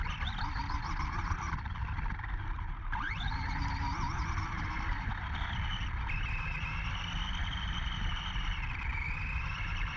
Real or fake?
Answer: real